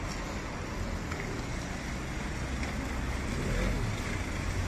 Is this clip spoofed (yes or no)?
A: no